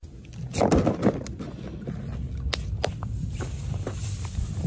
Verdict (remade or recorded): recorded